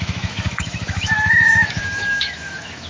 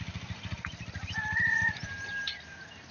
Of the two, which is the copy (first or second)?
first